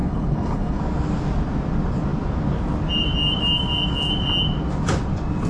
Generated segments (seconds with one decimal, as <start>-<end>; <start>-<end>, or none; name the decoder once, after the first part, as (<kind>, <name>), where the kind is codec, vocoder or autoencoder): 0.0-0.8 (codec, HILCodec)